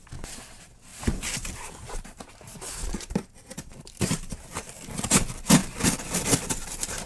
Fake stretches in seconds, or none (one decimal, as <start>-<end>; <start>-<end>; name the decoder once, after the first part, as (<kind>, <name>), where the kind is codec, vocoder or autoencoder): 0.9-5.1 (vocoder, BigVGAN v2); 5.6-6.2